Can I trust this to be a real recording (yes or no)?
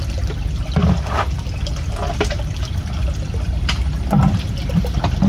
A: yes